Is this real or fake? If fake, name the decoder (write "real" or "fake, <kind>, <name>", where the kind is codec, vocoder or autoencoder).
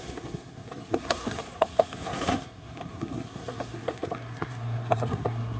fake, codec, SNAC